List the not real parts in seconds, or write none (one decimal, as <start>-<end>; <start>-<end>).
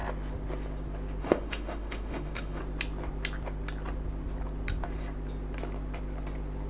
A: 1.2-2.6